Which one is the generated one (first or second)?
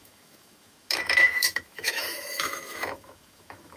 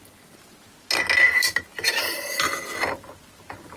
first